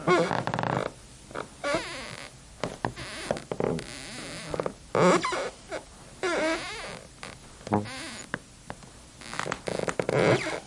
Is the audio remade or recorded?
recorded